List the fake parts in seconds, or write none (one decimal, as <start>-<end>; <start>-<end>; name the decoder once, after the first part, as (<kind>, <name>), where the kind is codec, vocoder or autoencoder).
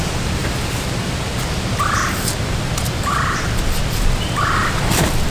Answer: none